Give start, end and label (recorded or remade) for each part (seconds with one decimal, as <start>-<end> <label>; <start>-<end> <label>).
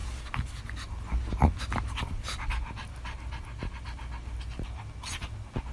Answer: 0.0-5.7 recorded